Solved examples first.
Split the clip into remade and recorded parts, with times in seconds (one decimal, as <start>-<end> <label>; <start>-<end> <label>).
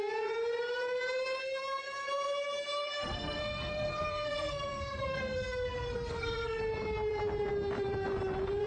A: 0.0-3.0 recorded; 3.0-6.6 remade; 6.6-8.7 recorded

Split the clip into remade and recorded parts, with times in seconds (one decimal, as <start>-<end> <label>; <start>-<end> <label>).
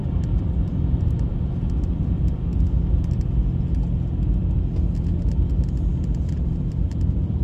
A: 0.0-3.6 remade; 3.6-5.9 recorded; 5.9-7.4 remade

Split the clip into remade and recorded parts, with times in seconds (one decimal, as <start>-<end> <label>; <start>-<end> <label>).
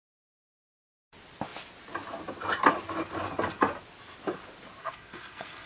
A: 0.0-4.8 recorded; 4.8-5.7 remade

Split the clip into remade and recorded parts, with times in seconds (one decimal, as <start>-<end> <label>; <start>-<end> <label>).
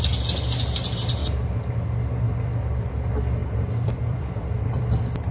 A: 0.0-3.4 recorded; 3.4-4.8 remade; 4.8-5.3 recorded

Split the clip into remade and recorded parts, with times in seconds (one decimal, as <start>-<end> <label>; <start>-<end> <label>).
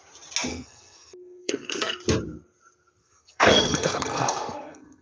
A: 0.0-0.5 recorded; 0.5-2.0 remade; 2.0-3.0 recorded; 3.0-5.0 remade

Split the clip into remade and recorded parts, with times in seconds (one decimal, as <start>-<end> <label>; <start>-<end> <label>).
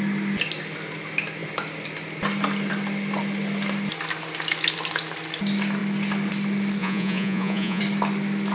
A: 0.0-6.8 recorded; 6.8-7.8 remade; 7.8-8.5 recorded